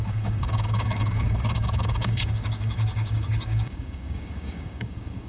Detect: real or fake fake